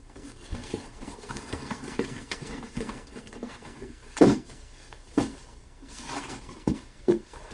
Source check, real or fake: fake